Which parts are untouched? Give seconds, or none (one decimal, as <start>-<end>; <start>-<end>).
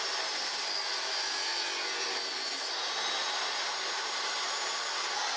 0.0-5.4